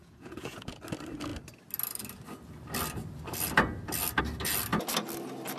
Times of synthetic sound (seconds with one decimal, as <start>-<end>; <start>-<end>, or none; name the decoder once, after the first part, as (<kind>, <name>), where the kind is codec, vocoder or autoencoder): 0.0-0.8 (vocoder, Vocos)